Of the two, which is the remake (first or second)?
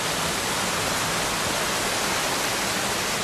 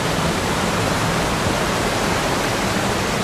second